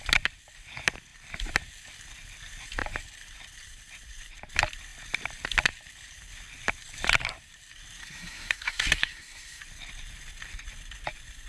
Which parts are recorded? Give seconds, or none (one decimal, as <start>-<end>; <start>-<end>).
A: 0.0-8.0; 9.6-11.5